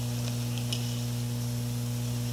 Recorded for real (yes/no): yes